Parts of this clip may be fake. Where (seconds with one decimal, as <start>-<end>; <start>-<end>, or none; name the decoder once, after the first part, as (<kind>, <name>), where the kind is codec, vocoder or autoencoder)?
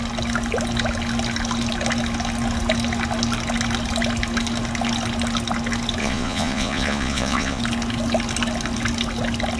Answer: 6.0-7.6 (vocoder, Vocos)